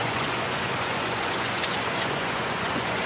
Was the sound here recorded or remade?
remade